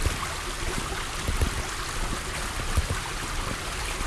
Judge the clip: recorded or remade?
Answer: recorded